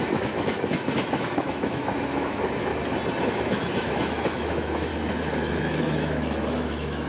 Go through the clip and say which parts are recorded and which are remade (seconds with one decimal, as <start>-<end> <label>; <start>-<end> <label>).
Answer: 0.0-2.7 remade; 2.7-3.2 recorded; 3.2-4.9 remade; 4.9-5.5 recorded; 5.5-7.1 remade